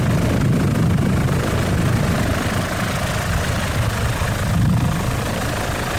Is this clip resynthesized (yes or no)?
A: no